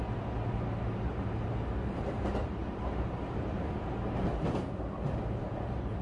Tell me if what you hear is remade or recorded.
remade